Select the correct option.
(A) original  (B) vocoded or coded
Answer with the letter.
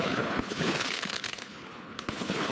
B